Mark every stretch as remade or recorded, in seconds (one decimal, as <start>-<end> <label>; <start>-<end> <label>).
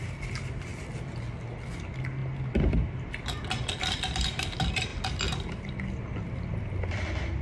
0.0-7.4 recorded